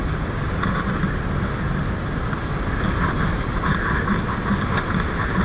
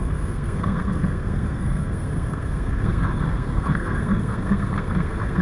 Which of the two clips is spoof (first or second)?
second